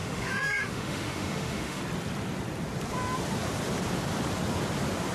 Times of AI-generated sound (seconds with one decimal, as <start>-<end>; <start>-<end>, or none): 0.0-1.8